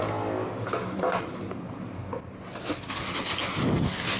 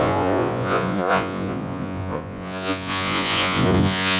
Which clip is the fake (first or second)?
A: second